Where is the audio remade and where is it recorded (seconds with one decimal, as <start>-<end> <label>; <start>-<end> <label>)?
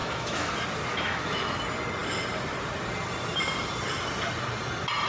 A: 0.0-0.5 remade; 0.5-0.9 recorded; 0.9-1.6 remade; 1.6-5.1 recorded